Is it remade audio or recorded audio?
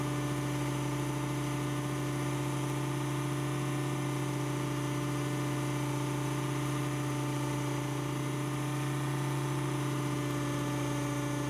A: recorded